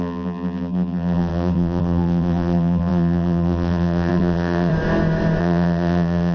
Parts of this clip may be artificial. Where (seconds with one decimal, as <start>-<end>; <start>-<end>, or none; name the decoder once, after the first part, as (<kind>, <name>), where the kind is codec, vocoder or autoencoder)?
0.0-4.7 (vocoder, BigVGAN v2); 5.4-6.3